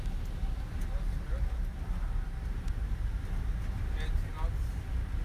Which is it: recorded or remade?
recorded